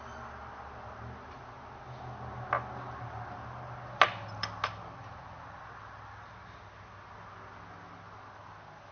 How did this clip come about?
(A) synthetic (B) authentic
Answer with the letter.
B